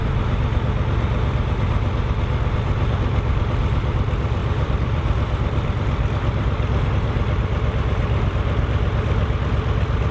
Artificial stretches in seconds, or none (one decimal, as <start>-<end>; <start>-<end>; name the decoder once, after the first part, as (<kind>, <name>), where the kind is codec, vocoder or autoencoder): 4.4-6.9 (vocoder, BigVGAN v2)